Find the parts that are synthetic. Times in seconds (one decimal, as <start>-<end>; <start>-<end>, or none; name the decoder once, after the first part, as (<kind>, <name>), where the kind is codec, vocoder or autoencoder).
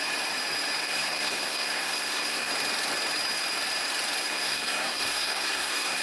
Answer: 0.8-2.5 (codec, SNAC); 4.2-6.0